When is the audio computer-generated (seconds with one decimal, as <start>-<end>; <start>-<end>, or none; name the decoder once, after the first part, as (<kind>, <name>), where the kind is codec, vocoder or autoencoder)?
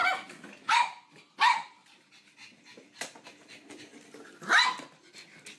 none